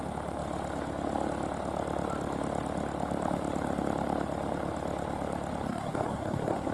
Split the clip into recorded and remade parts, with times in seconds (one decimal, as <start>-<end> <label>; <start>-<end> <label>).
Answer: 0.0-5.7 recorded; 5.7-6.7 remade